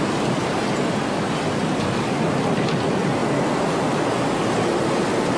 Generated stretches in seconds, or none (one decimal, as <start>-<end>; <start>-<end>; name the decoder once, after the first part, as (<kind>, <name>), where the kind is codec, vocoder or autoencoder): none